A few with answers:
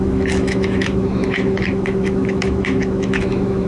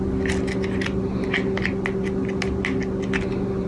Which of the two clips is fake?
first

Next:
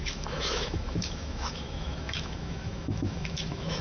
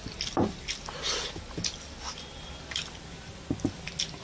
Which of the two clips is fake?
first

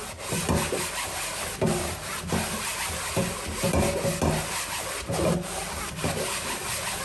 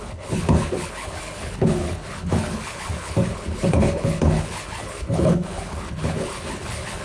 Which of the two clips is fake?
second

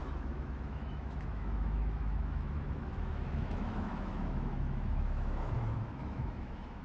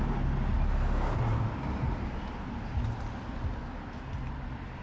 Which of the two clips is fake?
first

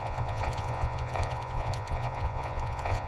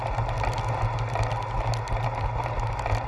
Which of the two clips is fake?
first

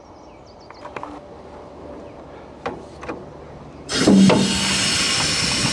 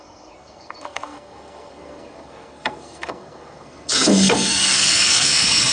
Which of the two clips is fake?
second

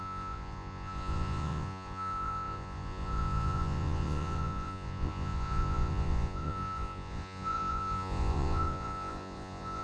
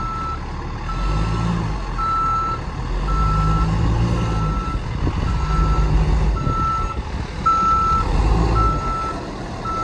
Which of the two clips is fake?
first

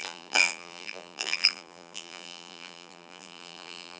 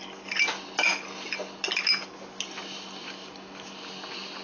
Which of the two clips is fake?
first